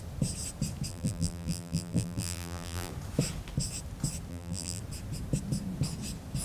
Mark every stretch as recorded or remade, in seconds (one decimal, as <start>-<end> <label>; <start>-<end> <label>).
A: 0.0-0.9 recorded; 0.9-2.9 remade; 2.9-4.3 recorded; 4.3-4.8 remade; 4.8-6.4 recorded